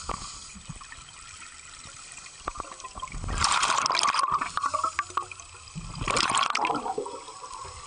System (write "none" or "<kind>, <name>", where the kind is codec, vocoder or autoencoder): none